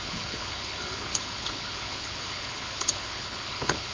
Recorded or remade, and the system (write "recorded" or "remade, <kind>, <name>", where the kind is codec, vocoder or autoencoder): remade, codec, HILCodec